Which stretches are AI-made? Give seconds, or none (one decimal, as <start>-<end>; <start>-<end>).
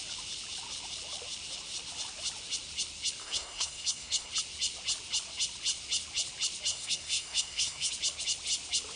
3.2-4.3; 6.7-7.9